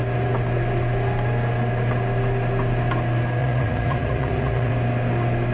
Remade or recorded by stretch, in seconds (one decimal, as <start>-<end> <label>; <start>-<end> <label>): 0.0-3.4 recorded; 3.4-4.7 remade; 4.7-5.5 recorded